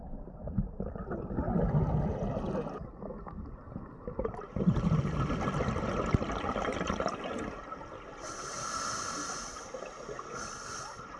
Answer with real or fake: real